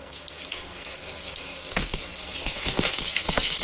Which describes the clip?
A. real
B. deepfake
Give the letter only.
B